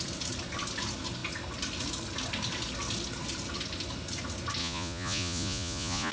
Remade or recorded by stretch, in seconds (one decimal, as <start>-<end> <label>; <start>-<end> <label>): 0.0-4.6 recorded; 4.6-6.1 remade